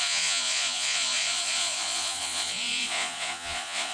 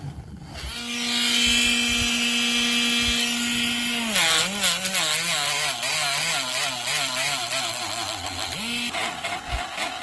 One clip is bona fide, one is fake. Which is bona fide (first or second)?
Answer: second